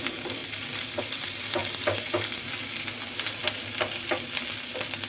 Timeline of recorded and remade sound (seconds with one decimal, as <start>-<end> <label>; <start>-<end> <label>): 0.0-5.1 recorded